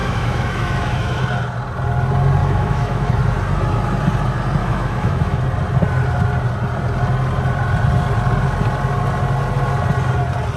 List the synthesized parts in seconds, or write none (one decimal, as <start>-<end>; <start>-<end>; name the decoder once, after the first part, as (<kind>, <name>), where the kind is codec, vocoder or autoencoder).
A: 0.0-1.2 (autoencoder, DAC-VAE); 2.4-3.2; 4.6-5.4